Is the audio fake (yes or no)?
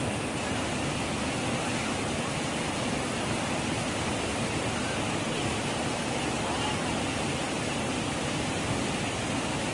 no